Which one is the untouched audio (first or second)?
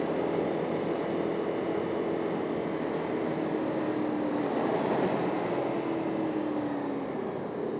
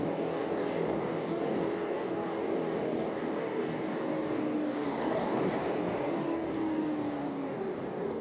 first